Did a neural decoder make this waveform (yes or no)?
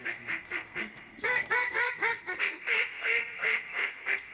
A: yes